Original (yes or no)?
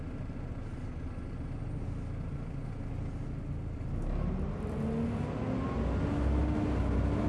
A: yes